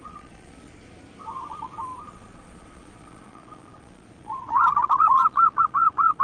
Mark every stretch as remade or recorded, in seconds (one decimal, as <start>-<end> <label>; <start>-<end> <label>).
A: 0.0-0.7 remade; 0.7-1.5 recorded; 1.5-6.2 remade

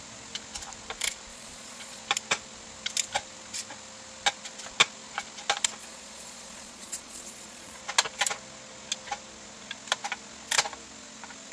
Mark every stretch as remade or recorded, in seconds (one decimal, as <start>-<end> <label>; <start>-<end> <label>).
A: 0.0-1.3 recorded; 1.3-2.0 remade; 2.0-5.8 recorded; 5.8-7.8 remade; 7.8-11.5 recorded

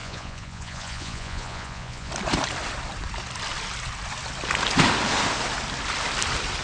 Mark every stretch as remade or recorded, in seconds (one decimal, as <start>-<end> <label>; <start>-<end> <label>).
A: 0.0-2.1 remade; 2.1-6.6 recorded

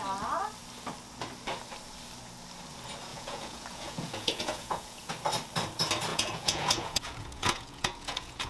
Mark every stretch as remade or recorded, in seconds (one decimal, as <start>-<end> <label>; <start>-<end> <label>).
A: 0.0-3.1 recorded; 3.1-5.1 remade; 5.1-6.1 recorded; 6.1-8.5 remade

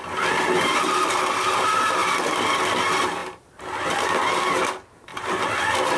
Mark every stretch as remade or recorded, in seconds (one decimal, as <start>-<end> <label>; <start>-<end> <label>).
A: 0.0-6.0 recorded

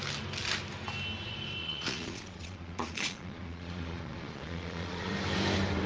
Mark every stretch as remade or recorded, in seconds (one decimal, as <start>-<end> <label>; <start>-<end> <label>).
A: 0.0-1.6 recorded; 1.6-5.1 remade; 5.1-5.9 recorded